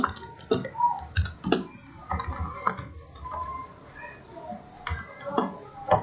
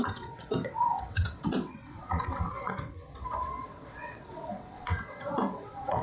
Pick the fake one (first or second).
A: second